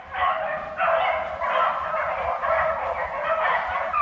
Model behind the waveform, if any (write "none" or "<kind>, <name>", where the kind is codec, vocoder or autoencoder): none